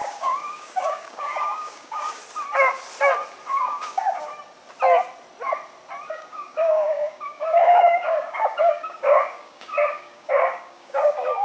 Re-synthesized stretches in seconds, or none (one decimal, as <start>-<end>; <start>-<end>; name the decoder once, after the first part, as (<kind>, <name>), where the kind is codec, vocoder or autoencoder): 0.0-2.2 (codec, DAC); 3.5-4.3; 6.1-11.4